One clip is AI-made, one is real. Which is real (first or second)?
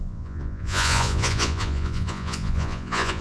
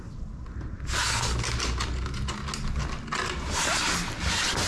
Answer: second